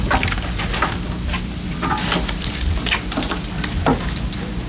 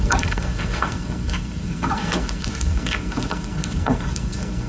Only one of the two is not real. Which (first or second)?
second